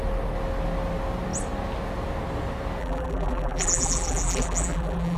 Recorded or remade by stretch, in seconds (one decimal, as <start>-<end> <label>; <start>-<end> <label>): 0.0-2.8 recorded; 2.8-5.2 remade